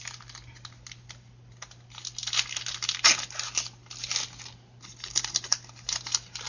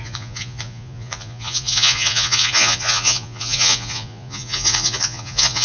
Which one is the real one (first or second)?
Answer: first